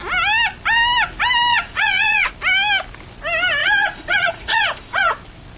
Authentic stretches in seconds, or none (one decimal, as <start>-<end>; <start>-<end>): 0.0-1.5; 2.3-3.6; 5.1-5.6